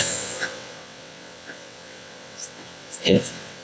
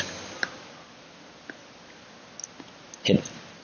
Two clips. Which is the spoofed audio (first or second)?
first